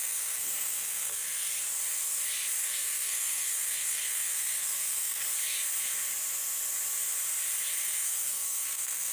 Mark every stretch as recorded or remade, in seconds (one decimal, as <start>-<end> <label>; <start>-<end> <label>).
0.0-1.5 remade; 1.5-2.6 recorded; 2.6-5.2 remade; 5.2-7.8 recorded; 7.8-9.1 remade